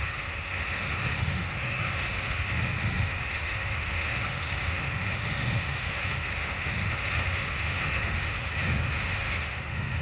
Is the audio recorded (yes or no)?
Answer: no